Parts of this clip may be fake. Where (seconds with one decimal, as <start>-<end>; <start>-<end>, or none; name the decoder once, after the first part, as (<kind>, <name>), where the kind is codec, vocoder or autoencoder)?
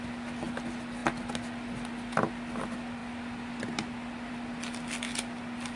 none